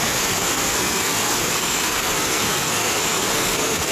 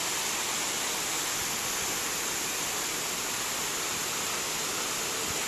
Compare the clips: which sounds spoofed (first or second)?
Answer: first